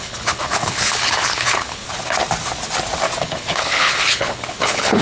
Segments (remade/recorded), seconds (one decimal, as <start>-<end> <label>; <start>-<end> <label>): 0.0-1.8 remade; 1.8-3.2 recorded; 3.2-5.0 remade